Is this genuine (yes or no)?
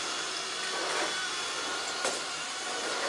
yes